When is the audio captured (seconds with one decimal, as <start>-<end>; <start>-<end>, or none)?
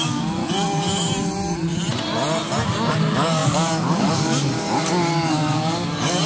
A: 0.4-2.9